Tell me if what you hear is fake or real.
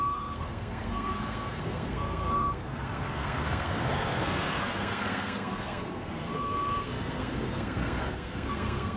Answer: fake